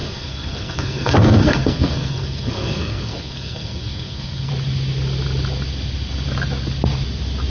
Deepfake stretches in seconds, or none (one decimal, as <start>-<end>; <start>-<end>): 0.0-4.5